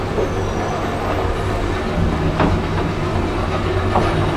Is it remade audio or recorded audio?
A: recorded